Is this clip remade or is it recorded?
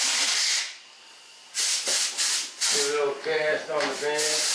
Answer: recorded